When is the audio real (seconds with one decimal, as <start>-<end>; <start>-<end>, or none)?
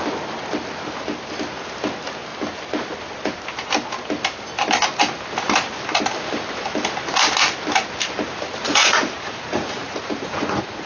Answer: 0.0-8.6